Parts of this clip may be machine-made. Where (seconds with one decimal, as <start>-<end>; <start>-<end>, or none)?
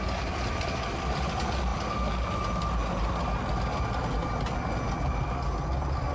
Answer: none